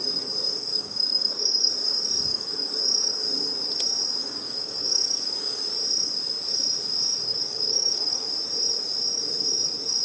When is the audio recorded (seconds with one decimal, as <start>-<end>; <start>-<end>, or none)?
0.0-0.6; 1.7-2.3; 2.8-4.2; 5.6-7.3; 8.3-10.0